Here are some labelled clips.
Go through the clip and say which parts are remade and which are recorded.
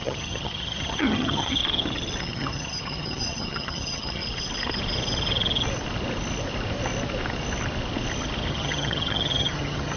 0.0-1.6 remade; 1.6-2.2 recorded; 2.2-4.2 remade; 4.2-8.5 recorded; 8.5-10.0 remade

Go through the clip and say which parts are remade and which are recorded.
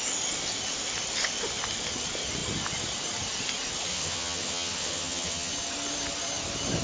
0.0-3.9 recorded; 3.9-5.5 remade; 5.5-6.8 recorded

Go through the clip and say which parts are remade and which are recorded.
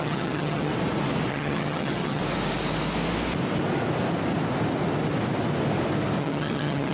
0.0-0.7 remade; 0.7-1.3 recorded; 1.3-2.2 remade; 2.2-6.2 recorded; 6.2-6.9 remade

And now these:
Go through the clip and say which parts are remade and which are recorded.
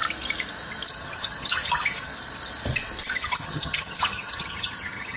0.0-0.9 recorded; 0.9-2.1 remade; 2.1-3.1 recorded; 3.1-5.2 remade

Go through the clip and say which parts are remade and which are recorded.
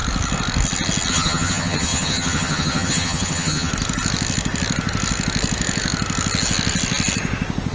0.0-1.1 recorded; 1.1-3.7 remade; 3.7-7.7 recorded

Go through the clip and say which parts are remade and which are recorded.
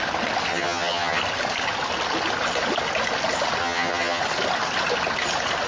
0.0-0.5 recorded; 0.5-1.2 remade; 1.2-3.6 recorded; 3.6-4.2 remade; 4.2-5.7 recorded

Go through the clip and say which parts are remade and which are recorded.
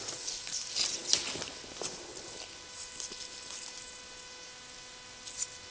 0.0-5.7 recorded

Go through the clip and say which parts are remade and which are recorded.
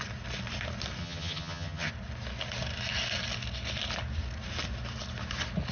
0.0-1.0 recorded; 1.0-1.9 remade; 1.9-5.7 recorded